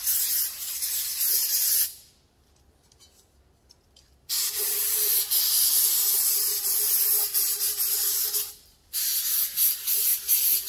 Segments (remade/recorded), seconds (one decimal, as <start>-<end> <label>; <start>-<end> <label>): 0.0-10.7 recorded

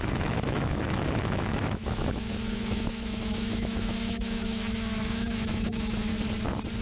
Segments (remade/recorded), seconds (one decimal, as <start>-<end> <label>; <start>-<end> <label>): 0.0-6.1 remade; 6.1-6.8 recorded

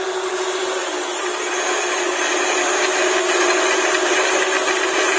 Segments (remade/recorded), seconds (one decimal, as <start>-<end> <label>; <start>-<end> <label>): 0.0-5.2 recorded